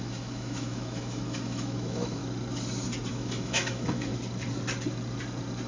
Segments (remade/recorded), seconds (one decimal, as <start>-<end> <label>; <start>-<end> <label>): 0.0-2.2 remade; 2.2-3.1 recorded; 3.1-4.1 remade; 4.1-5.7 recorded